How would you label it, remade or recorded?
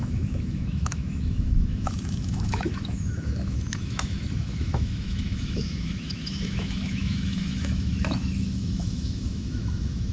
remade